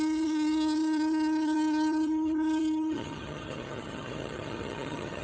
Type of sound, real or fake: fake